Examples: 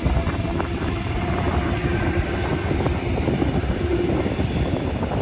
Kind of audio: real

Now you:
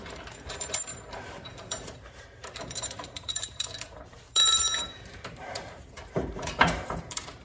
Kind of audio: fake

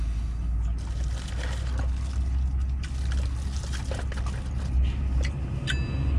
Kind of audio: real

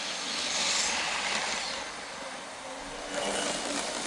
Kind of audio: real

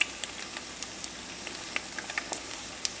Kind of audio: real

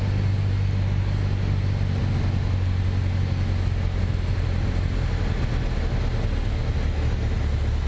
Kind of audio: real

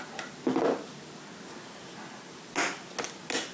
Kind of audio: real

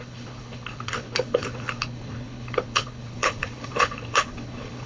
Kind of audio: fake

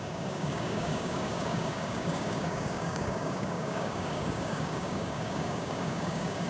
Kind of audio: fake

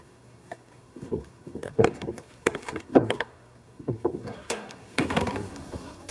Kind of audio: fake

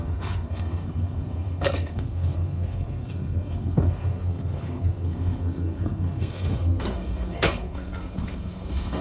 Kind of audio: fake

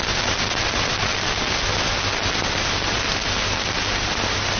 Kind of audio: real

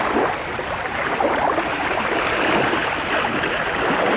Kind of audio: real